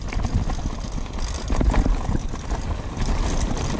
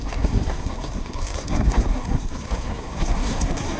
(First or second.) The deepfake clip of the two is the second